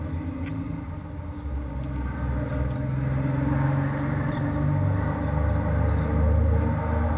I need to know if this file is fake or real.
real